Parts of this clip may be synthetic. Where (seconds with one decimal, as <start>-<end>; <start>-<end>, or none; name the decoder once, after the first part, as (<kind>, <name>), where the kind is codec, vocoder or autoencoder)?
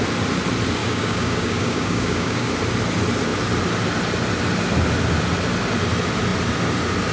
0.8-2.5 (codec, DAC)